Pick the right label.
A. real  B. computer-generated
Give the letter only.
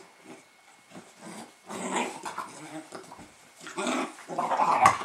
B